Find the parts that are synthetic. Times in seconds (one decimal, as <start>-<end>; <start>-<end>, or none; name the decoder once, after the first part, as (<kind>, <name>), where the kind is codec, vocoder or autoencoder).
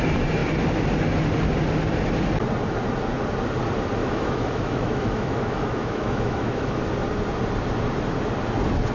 4.0-6.8 (autoencoder, DAC-VAE)